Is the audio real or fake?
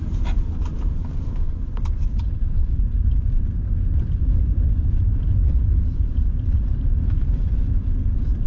fake